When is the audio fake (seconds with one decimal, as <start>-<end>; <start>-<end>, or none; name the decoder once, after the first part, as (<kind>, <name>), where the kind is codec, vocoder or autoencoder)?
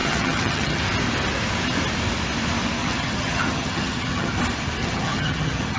0.0-0.8 (vocoder, HiFi-GAN); 2.8-4.3; 4.8-5.8